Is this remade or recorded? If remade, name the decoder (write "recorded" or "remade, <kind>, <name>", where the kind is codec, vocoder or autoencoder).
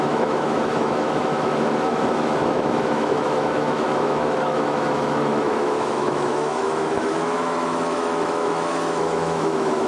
remade, autoencoder, DAC-VAE